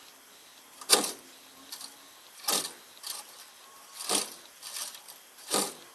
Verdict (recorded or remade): recorded